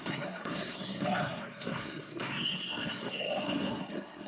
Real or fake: fake